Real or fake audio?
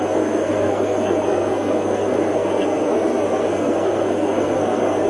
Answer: fake